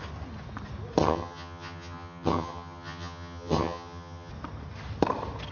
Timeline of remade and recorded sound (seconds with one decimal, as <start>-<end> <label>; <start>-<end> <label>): 0.0-1.0 recorded; 1.0-4.3 remade; 4.3-5.5 recorded